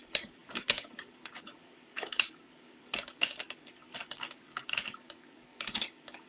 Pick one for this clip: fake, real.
fake